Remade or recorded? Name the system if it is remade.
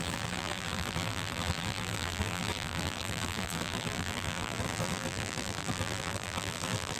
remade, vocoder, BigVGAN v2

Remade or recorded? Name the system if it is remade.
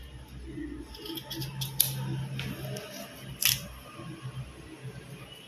recorded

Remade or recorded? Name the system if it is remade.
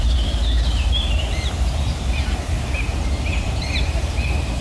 remade, vocoder, BigVGAN v2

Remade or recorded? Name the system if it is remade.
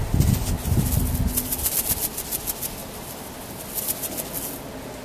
recorded